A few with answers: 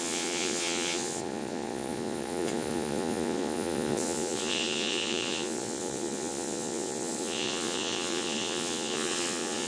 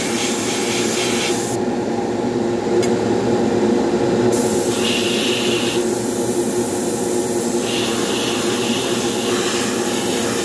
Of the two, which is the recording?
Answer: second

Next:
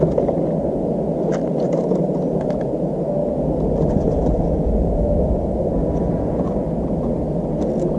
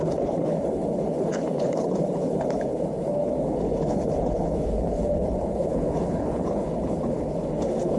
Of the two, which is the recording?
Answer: first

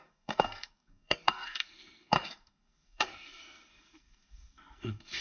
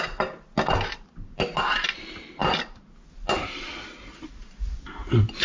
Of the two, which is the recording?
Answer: second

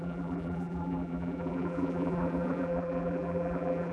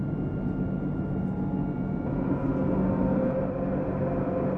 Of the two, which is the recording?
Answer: second